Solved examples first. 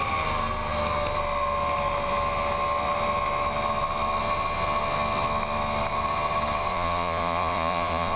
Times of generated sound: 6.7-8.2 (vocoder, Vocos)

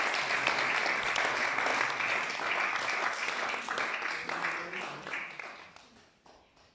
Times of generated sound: 0.0-1.7 (vocoder, BigVGAN v2); 5.7-6.7

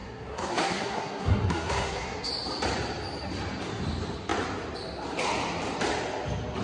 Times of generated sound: 0.0-2.3 (codec, SNAC)

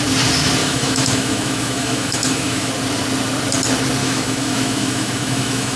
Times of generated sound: 0.6-2.7 (autoencoder, DAC-VAE); 4.0-5.8

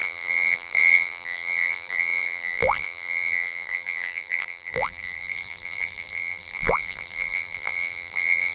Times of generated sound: 0.0-8.5 (vocoder, BigVGAN v2)

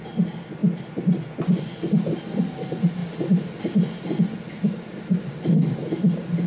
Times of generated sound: 0.6-1.2 (vocoder, BigVGAN v2)